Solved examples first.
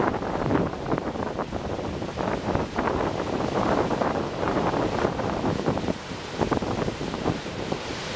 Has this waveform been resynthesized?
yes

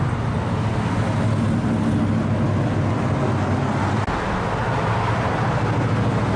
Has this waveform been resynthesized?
no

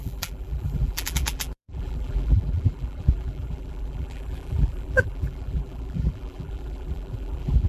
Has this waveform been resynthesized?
yes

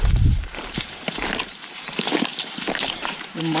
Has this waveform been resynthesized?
yes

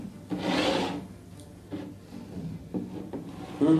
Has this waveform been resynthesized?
no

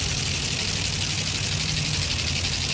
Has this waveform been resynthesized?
no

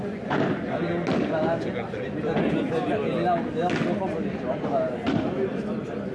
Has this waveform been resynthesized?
no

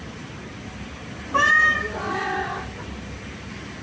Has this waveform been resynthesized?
no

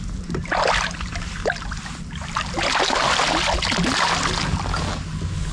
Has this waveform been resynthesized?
no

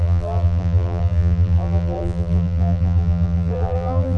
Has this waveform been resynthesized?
yes